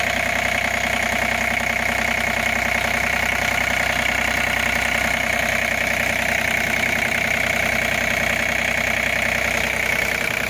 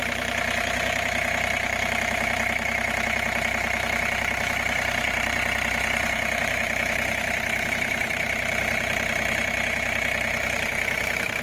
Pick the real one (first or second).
first